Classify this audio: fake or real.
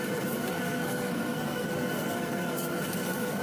fake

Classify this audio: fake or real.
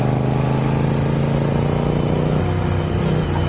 real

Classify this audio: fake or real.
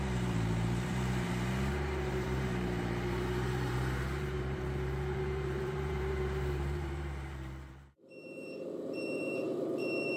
fake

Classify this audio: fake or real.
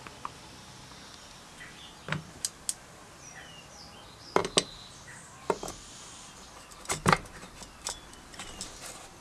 real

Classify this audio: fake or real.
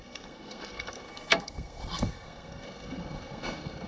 fake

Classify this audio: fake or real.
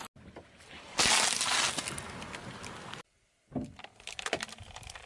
real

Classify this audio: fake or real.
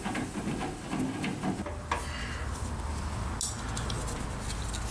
real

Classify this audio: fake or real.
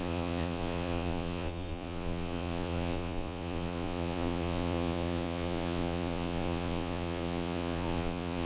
fake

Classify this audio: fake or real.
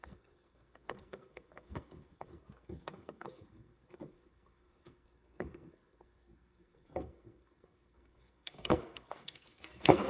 fake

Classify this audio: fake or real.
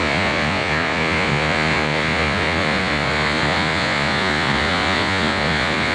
fake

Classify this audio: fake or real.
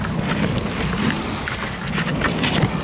real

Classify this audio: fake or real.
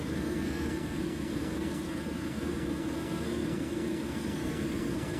fake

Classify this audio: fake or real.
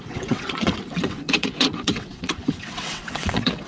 fake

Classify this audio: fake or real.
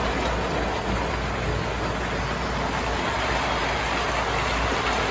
real